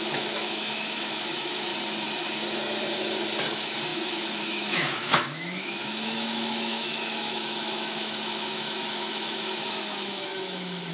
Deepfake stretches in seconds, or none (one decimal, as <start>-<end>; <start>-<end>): 0.0-1.7; 3.5-10.9

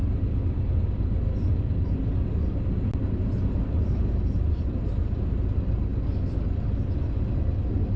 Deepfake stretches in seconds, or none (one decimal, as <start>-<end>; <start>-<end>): none

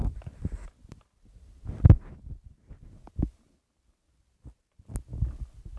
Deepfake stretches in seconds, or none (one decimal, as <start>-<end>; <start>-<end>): none

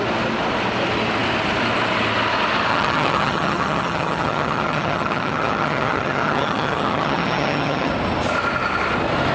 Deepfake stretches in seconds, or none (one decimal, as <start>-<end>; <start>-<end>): 2.7-7.9

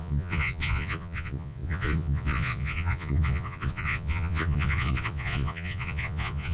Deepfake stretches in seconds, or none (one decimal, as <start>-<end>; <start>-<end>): 0.0-6.5

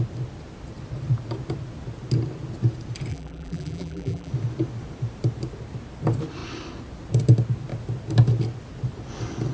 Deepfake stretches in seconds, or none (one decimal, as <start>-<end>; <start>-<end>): 3.1-4.3